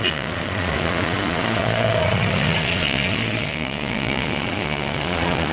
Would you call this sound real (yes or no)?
no